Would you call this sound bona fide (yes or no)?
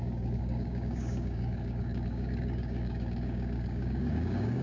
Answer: no